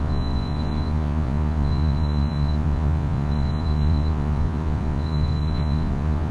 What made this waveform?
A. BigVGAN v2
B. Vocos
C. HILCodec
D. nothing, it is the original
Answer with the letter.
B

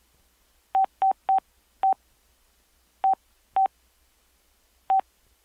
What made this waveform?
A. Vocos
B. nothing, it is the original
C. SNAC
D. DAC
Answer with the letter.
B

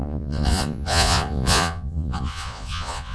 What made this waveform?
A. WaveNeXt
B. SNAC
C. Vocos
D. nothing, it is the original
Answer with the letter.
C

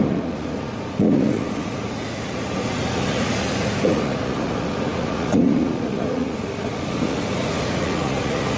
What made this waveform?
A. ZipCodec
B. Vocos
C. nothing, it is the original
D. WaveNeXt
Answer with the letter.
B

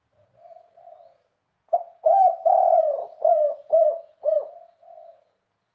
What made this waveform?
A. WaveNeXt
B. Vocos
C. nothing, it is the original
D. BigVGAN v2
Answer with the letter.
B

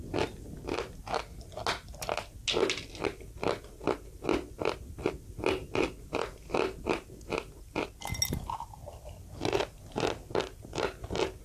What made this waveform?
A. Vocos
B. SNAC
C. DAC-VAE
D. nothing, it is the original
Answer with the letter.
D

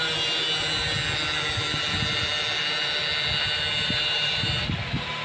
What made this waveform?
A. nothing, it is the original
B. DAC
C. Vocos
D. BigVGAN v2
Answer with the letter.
A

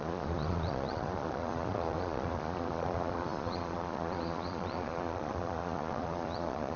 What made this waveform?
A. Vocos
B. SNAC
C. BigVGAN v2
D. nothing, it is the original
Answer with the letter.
A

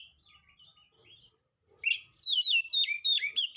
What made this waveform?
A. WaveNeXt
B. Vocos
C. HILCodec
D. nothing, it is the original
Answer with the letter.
D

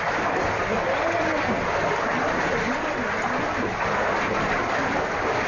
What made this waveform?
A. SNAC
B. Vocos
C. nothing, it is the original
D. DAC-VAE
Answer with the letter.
C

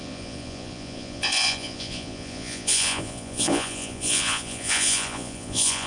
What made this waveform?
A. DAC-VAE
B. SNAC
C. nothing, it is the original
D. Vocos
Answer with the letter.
D